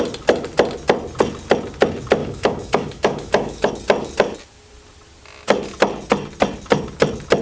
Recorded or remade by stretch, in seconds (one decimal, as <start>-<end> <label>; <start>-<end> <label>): 0.0-2.2 recorded; 2.2-3.7 remade; 3.7-7.4 recorded